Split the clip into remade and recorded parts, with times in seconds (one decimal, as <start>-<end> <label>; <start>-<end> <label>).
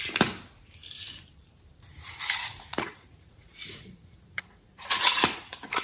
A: 0.0-1.9 recorded; 1.9-5.8 remade